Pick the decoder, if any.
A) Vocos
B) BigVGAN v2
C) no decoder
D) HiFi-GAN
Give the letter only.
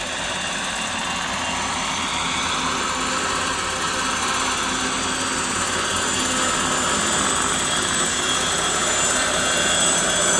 C